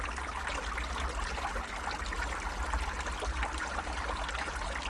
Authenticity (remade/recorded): recorded